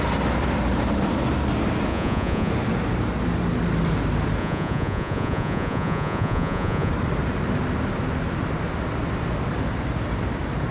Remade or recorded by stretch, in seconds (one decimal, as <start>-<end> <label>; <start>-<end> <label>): 0.0-1.9 recorded; 1.9-2.5 remade; 2.5-4.4 recorded; 4.4-6.9 remade; 6.9-10.7 recorded